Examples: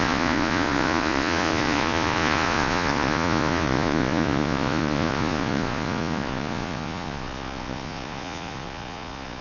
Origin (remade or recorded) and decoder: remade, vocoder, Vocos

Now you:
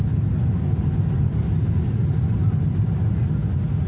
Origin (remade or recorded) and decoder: recorded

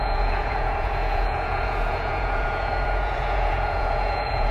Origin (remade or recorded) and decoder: remade, vocoder, Vocos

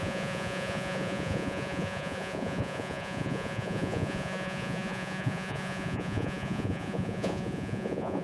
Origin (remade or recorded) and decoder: remade, vocoder, Vocos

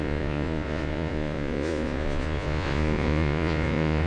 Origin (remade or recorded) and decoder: remade, vocoder, Vocos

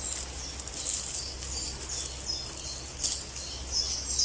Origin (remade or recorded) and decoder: recorded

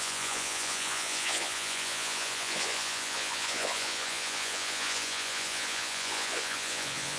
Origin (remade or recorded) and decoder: remade, vocoder, Vocos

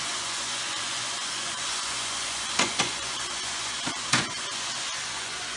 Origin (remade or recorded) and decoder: remade, vocoder, Vocos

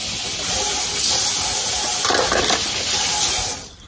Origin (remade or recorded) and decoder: recorded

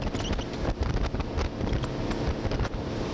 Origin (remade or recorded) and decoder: recorded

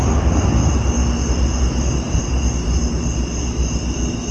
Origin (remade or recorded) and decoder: recorded